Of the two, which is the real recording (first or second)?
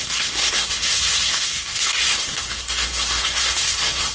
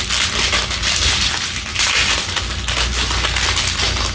second